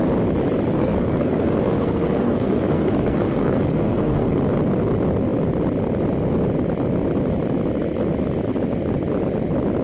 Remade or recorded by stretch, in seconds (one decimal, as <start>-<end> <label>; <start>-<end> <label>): 0.0-0.8 recorded; 0.8-4.4 remade; 4.4-9.8 recorded